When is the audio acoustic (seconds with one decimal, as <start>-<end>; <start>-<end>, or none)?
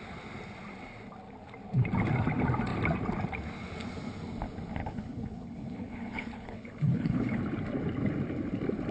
0.0-4.8; 7.4-8.9